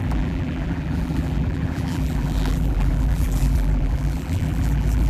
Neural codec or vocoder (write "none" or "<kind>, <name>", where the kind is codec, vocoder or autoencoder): vocoder, BigVGAN v2